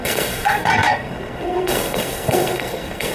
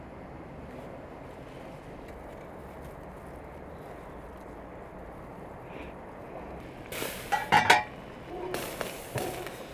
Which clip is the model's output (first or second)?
first